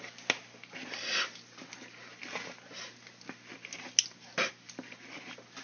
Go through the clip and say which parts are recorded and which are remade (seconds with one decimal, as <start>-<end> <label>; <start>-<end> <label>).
0.0-5.6 recorded